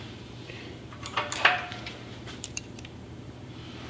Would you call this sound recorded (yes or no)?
no